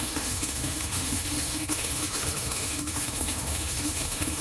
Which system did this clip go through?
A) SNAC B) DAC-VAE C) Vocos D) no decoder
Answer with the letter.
B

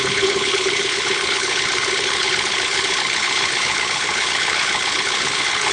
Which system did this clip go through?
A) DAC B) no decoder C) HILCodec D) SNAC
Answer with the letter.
C